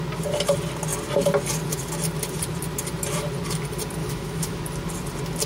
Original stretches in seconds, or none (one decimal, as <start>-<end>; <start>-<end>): 0.0-4.0; 4.6-5.5

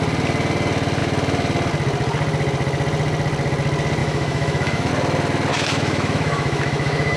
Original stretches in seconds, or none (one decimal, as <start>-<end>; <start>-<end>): 0.0-4.0; 4.9-5.5

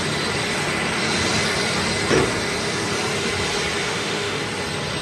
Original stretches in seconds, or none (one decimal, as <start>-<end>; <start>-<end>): 0.0-3.8; 4.4-5.0

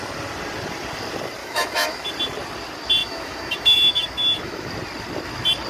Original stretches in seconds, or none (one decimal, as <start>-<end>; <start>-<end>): 0.0-1.4; 2.1-3.0; 4.7-5.7